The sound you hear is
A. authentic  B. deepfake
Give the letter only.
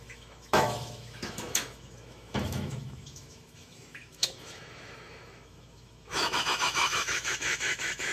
B